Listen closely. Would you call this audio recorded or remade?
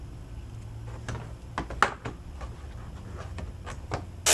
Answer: recorded